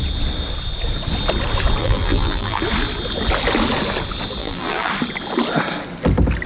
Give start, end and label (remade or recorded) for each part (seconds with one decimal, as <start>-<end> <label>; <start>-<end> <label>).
0.0-1.8 recorded; 1.8-2.6 remade; 2.6-4.4 recorded; 4.4-4.9 remade; 4.9-6.5 recorded